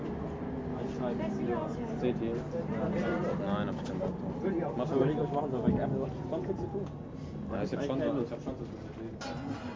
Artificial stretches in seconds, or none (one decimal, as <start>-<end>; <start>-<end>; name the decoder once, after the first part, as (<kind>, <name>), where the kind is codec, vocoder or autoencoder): none